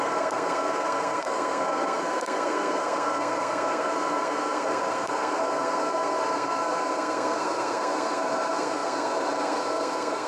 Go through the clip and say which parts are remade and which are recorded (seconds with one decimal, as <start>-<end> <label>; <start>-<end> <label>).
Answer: 0.0-10.3 remade

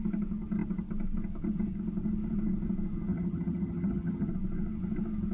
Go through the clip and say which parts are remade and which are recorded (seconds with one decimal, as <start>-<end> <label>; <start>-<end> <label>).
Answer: 0.0-3.1 recorded; 3.1-4.3 remade; 4.3-5.3 recorded

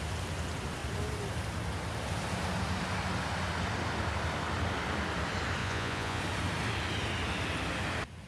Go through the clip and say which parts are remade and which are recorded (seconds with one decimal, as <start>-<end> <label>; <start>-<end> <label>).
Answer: 0.0-5.6 recorded; 5.6-6.2 remade; 6.2-8.3 recorded

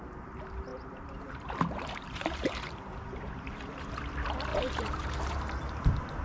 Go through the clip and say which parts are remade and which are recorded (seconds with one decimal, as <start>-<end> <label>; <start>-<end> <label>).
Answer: 0.0-0.7 recorded; 0.7-4.0 remade; 4.0-4.5 recorded; 4.5-6.2 remade

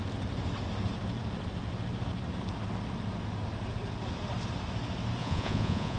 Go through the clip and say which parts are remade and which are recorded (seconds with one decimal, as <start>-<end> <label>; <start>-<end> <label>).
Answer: 0.0-5.2 recorded; 5.2-6.0 remade